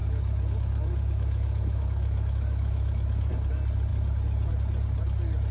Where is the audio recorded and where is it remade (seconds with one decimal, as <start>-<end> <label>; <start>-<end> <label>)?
0.0-3.3 remade; 3.3-5.5 recorded